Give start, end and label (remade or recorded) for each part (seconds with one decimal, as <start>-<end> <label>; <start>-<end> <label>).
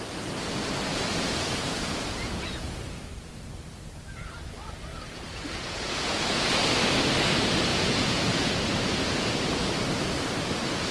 0.0-0.9 recorded; 0.9-3.0 remade; 3.0-4.9 recorded; 4.9-6.6 remade; 6.6-7.7 recorded; 7.7-8.5 remade; 8.5-10.9 recorded